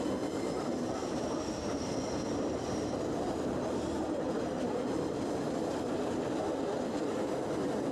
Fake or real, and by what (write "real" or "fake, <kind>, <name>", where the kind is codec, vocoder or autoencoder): real